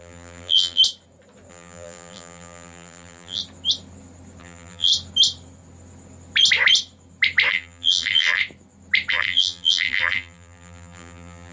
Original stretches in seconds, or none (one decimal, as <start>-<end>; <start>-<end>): 0.8-1.5; 3.4-4.4; 4.9-7.5; 8.4-9.1